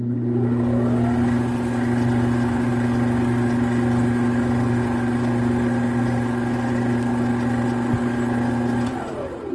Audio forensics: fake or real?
real